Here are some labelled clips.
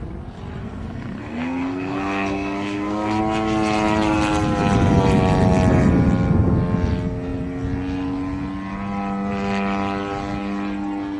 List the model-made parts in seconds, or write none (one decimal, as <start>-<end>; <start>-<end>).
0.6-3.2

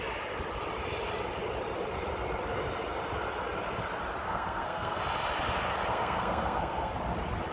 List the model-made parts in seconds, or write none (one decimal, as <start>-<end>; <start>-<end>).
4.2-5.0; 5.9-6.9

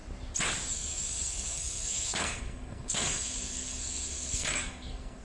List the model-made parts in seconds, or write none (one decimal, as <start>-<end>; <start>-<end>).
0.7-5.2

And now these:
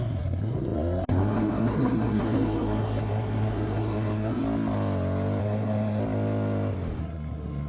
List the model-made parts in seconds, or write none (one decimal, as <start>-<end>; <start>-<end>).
0.0-4.4; 5.4-6.0; 7.0-7.7

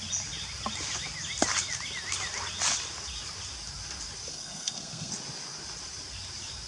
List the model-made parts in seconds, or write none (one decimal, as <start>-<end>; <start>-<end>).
4.3-5.1

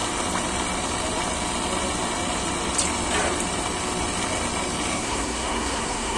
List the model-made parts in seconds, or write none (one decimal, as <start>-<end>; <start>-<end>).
4.9-6.2

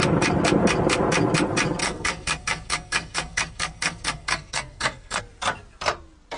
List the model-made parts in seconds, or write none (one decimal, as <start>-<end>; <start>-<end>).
1.8-5.2

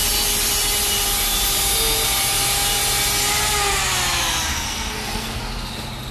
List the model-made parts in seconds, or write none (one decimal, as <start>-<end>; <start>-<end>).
4.5-5.4